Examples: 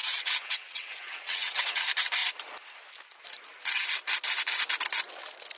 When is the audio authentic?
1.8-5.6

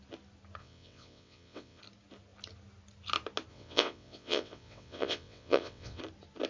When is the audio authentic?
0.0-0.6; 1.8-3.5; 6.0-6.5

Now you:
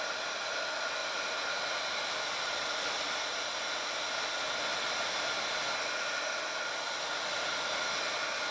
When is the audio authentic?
0.0-8.5

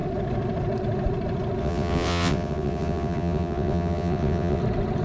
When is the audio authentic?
0.0-1.6; 4.6-5.0

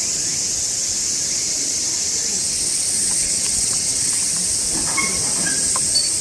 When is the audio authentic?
0.0-3.2; 4.1-6.2

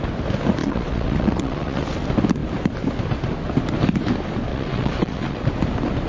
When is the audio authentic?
0.0-0.6; 1.8-4.5; 5.5-6.1